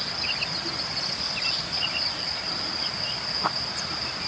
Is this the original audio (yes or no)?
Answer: yes